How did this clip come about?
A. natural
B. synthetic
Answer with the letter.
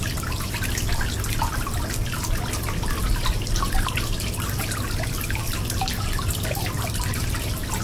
A